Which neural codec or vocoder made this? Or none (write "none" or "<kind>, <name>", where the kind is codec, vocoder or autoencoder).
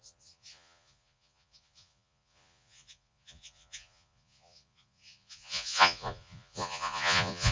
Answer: vocoder, Vocos